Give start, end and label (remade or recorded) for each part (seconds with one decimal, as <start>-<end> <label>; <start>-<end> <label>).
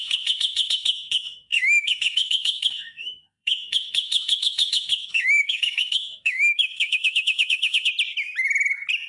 0.0-7.9 remade; 7.9-9.1 recorded